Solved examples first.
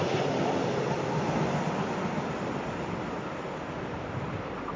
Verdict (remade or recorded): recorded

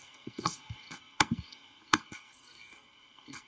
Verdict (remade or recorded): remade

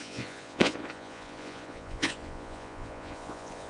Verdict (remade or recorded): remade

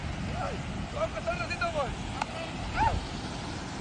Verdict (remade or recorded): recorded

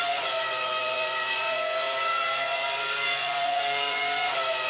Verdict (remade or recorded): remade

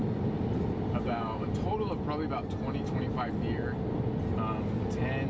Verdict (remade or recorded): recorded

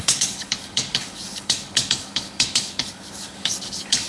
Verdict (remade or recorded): remade